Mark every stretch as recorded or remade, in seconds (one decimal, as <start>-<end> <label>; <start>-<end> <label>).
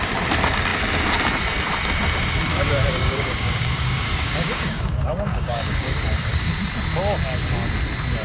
0.0-2.5 recorded; 2.5-6.5 remade; 6.5-8.2 recorded